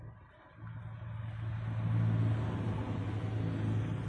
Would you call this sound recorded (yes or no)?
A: yes